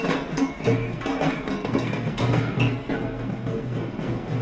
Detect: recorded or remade remade